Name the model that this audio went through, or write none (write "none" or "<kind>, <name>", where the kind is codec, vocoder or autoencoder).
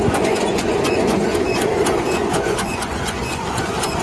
vocoder, Vocos